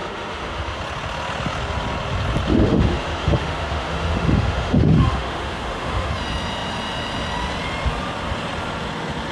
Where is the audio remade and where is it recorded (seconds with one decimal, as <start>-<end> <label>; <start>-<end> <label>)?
0.0-0.8 remade; 0.8-2.5 recorded; 2.5-6.1 remade; 6.1-9.3 recorded